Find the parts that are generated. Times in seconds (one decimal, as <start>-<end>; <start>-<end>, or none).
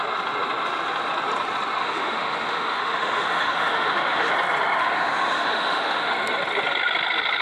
1.8-4.3; 4.8-6.1